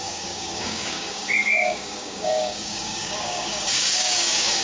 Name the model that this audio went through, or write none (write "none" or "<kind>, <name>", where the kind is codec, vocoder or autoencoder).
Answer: codec, DAC